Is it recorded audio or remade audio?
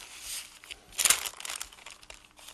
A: recorded